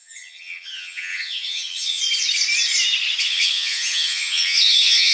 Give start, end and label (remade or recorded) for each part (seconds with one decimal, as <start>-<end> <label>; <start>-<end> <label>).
0.0-2.0 remade; 2.0-3.2 recorded; 3.2-5.1 remade